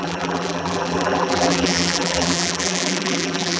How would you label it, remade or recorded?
remade